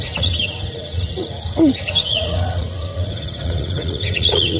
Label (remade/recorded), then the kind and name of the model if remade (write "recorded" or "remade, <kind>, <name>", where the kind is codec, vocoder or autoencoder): remade, vocoder, Vocos